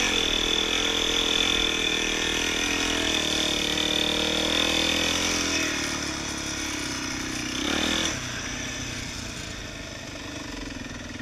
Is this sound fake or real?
real